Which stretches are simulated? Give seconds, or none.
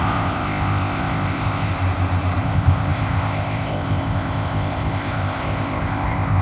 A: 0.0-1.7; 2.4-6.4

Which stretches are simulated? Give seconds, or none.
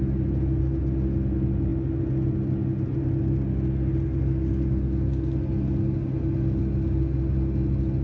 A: none